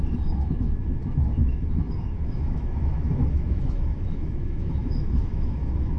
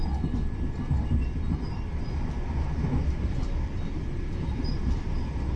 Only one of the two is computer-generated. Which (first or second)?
first